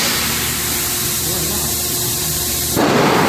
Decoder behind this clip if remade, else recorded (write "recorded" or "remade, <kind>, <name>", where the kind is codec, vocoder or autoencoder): recorded